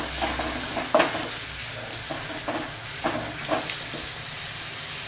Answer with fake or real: real